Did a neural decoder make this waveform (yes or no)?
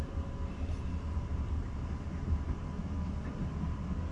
no